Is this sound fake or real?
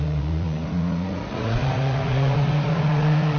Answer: fake